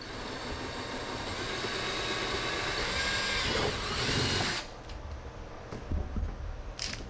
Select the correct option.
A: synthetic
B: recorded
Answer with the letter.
B